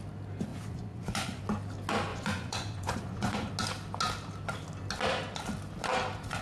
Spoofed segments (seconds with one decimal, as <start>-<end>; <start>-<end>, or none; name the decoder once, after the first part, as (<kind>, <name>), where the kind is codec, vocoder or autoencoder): 0.5-1.4 (vocoder, Vocos); 2.1-3.5